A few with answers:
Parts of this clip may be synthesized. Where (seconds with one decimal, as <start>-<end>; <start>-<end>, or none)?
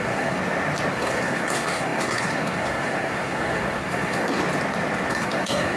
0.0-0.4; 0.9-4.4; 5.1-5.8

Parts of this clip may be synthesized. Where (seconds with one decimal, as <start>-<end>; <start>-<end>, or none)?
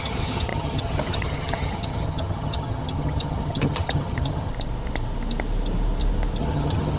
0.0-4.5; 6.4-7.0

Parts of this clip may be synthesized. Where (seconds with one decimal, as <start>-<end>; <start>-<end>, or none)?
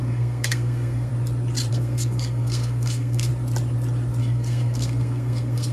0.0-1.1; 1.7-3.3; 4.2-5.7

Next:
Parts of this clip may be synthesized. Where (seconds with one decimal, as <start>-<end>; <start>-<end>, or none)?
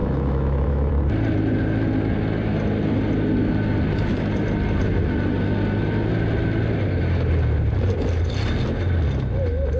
0.0-0.9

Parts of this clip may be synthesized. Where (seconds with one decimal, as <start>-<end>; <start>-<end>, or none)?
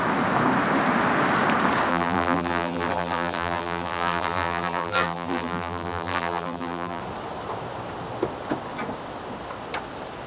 1.9-7.0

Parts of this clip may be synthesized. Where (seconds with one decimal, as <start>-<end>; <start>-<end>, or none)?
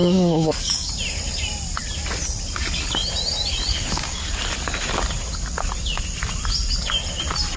0.0-0.9; 3.7-4.3